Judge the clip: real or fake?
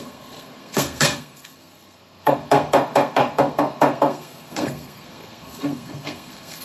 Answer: fake